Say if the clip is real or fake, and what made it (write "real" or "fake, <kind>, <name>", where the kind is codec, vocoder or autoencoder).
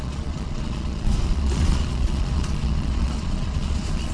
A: fake, vocoder, Vocos